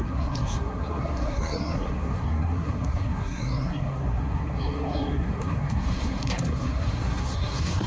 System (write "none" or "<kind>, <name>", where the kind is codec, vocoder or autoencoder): codec, SNAC